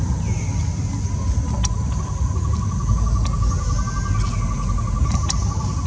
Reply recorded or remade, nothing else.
recorded